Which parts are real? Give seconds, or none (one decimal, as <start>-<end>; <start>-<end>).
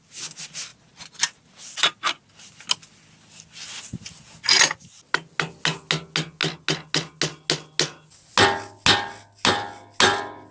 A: 0.0-10.5